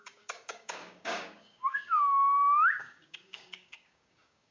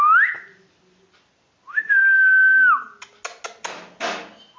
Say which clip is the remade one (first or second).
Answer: first